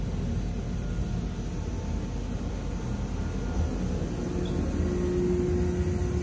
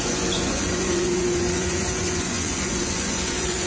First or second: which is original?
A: first